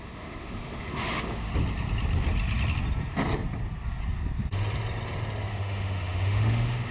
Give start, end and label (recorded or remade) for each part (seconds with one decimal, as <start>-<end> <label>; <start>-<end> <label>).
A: 0.0-1.5 remade; 1.5-5.5 recorded; 5.5-6.9 remade